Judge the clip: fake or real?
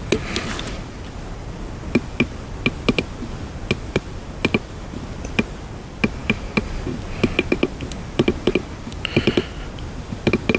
real